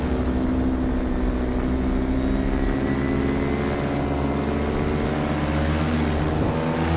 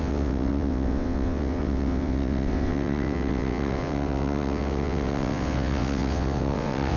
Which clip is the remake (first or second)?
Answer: second